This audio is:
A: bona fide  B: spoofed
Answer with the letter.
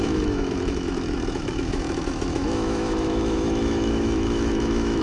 B